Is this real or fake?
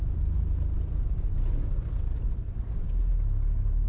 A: real